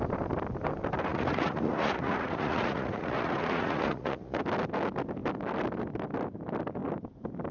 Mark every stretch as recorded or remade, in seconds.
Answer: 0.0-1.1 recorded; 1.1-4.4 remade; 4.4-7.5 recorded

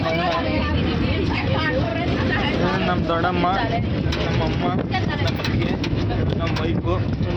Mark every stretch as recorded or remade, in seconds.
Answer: 0.0-0.6 remade; 0.6-1.3 recorded; 1.3-1.9 remade; 1.9-5.4 recorded; 5.4-7.4 remade